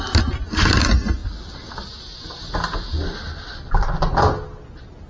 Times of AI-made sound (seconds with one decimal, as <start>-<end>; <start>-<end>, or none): none